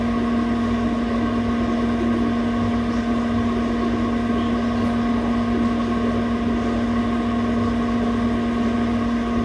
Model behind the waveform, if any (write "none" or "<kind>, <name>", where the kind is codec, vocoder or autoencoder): none